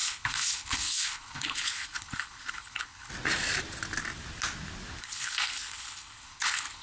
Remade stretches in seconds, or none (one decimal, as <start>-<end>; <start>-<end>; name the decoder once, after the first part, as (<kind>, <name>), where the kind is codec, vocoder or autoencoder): 0.0-3.1 (codec, HILCodec); 5.0-6.8